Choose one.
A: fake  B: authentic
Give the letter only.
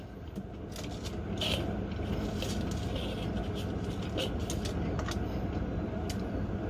B